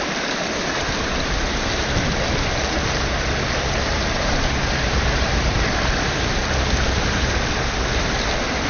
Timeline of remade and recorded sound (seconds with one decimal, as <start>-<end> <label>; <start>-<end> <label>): 0.0-3.9 recorded; 3.9-5.7 remade; 5.7-8.7 recorded